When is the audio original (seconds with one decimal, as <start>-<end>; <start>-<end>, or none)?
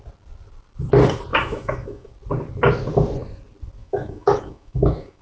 0.0-1.3; 2.1-3.8